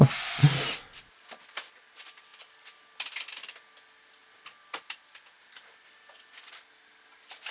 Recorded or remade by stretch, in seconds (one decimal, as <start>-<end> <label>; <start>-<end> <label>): 0.0-7.5 recorded

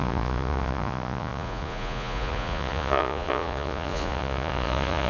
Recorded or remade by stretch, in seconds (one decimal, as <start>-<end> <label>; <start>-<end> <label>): 0.0-5.1 remade

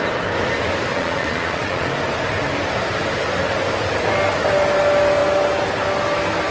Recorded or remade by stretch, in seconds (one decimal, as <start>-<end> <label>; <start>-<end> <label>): 0.0-0.9 recorded; 0.9-1.9 remade; 1.9-6.5 recorded

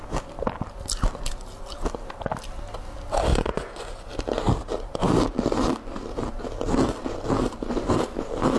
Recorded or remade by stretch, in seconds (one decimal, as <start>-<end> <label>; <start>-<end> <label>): 0.0-3.3 recorded; 3.3-4.1 remade; 4.1-8.6 recorded